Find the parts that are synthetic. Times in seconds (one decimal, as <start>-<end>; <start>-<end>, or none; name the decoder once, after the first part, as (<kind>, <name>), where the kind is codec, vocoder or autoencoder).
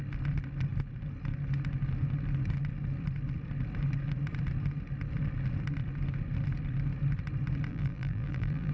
7.7-8.7 (vocoder, BigVGAN v2)